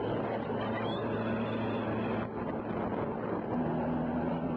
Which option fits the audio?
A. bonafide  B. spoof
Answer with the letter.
A